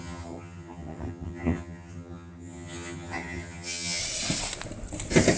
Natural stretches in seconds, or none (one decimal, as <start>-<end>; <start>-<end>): 4.0-5.4